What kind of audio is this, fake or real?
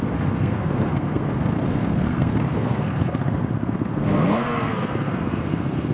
fake